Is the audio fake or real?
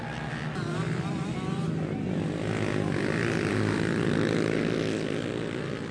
real